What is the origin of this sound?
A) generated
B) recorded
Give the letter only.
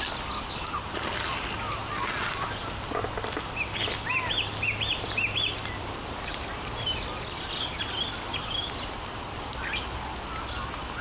B